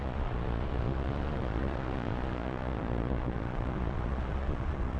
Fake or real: fake